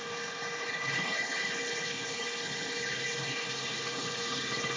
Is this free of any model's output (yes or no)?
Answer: no